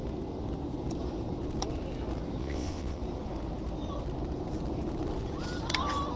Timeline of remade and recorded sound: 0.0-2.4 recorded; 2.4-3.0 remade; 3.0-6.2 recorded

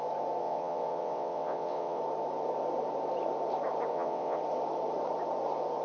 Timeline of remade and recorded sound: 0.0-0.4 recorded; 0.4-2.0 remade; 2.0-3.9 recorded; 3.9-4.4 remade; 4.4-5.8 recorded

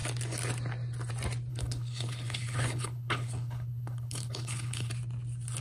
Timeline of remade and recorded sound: 0.0-1.5 recorded; 1.5-4.9 remade; 4.9-5.6 recorded

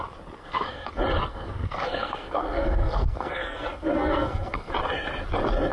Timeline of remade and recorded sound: 0.0-0.4 recorded; 0.4-0.9 remade; 0.9-1.3 recorded; 1.3-4.7 remade; 4.7-5.7 recorded